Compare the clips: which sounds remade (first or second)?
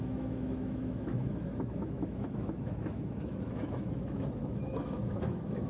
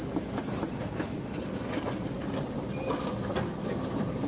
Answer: first